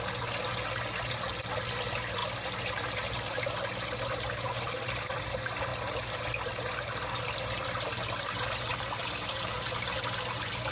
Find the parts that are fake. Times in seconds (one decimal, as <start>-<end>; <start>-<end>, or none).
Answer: none